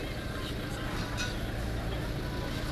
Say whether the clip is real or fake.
real